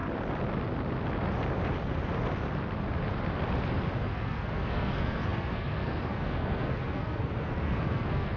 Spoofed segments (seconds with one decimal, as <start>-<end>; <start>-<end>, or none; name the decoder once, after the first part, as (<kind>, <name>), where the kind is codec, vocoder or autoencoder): 4.0-8.4 (codec, SNAC)